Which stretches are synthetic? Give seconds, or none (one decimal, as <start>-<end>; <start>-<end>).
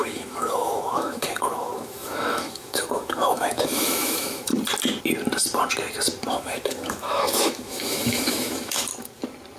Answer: 0.0-4.5; 6.3-8.9